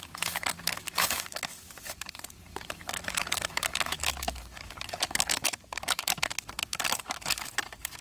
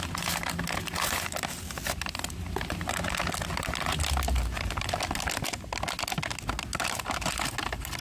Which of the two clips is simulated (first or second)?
first